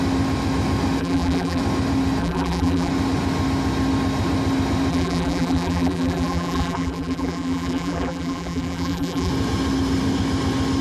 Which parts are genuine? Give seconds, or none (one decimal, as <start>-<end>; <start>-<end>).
0.0-1.0; 1.6-2.2; 2.9-4.9; 9.3-10.8